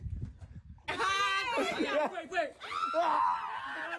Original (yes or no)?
yes